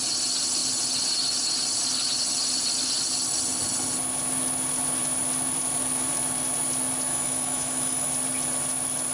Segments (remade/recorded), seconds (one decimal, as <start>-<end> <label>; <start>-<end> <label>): 0.0-7.1 recorded; 7.1-8.1 remade; 8.1-9.1 recorded